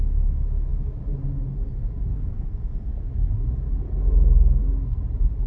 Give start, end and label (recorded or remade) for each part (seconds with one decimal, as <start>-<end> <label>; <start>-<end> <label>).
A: 0.0-2.1 recorded; 2.1-3.3 remade; 3.3-4.0 recorded; 4.0-5.0 remade; 5.0-5.5 recorded